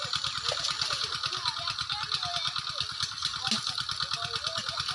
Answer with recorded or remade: recorded